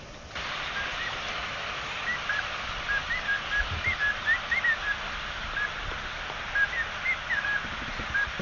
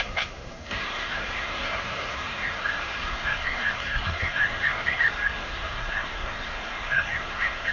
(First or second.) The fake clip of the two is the second